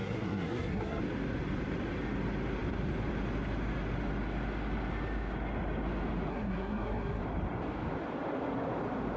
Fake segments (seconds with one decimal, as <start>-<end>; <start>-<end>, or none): 0.0-1.0; 6.3-7.2